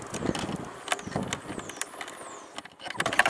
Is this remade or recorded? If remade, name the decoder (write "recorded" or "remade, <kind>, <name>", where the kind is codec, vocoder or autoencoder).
recorded